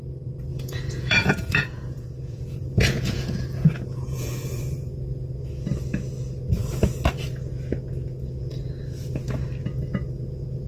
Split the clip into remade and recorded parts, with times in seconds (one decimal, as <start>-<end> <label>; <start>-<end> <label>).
0.0-0.5 recorded; 0.5-4.6 remade; 4.6-10.7 recorded